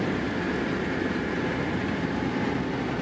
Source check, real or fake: real